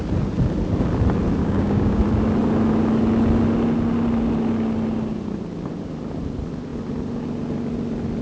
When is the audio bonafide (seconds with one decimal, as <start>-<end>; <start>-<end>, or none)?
0.0-1.4; 2.0-8.2